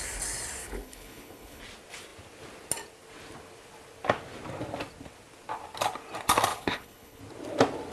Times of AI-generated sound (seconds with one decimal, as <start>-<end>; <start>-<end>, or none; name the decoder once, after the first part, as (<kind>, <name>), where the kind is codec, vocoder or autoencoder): 0.6-1.6 (codec, HILCodec); 6.5-7.2